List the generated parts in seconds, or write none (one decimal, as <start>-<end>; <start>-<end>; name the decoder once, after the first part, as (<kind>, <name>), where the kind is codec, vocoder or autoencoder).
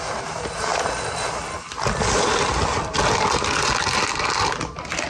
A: none